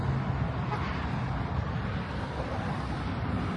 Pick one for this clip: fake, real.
real